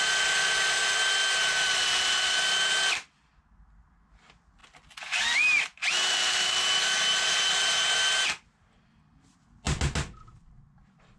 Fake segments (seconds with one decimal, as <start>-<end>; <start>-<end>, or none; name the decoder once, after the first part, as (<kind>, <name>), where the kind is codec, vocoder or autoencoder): none